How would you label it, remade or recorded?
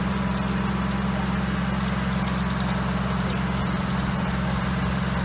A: recorded